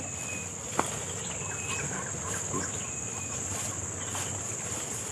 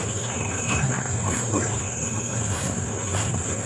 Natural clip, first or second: first